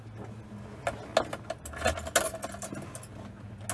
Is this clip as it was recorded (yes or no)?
yes